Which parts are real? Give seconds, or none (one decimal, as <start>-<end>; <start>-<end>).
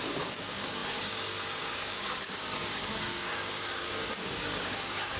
none